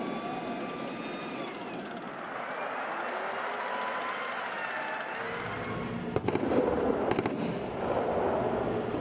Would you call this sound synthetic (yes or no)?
no